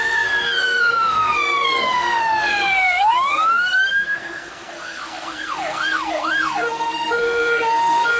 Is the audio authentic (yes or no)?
no